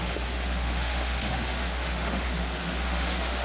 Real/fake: fake